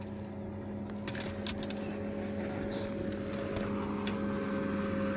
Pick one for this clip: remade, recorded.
recorded